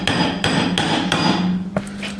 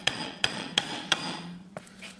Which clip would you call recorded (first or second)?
first